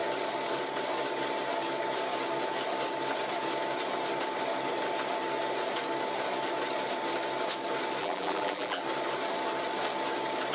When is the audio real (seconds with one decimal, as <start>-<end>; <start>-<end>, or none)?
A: 0.0-8.0; 8.8-10.5